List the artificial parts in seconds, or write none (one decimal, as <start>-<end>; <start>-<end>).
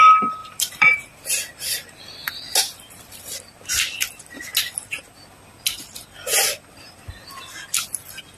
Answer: 0.4-1.3